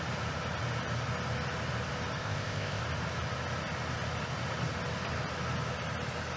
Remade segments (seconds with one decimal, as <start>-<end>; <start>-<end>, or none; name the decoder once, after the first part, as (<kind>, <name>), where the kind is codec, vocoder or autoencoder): 2.2-2.8 (codec, ZipCodec)